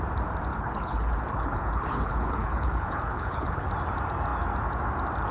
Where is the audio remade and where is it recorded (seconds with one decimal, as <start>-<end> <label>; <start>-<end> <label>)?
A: 0.0-0.5 recorded; 0.5-3.7 remade; 3.7-5.3 recorded